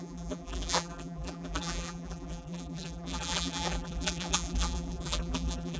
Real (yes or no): no